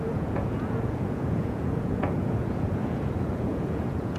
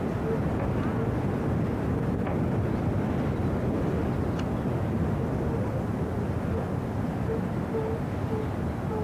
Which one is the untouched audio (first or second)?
second